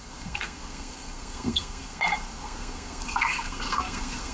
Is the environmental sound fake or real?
fake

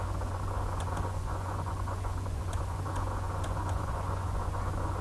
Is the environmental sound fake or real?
fake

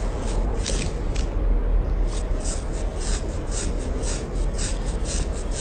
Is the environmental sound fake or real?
real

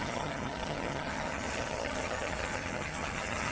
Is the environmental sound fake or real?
fake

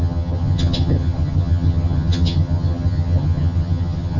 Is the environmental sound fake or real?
fake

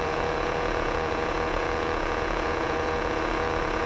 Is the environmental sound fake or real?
fake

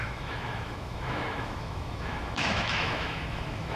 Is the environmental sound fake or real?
fake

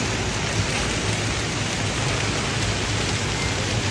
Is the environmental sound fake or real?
real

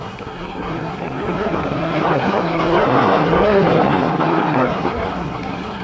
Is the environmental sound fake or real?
fake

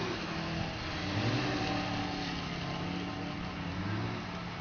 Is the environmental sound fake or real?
real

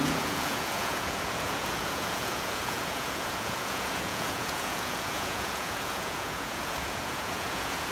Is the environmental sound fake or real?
fake